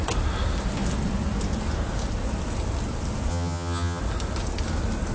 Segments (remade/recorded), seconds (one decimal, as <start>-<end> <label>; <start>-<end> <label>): 0.0-3.3 recorded; 3.3-4.0 remade; 4.0-5.1 recorded